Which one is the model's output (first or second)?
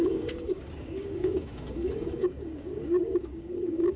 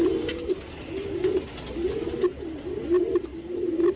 first